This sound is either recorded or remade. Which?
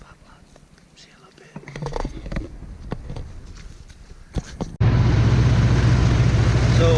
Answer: recorded